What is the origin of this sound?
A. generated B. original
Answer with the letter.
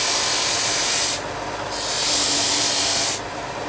B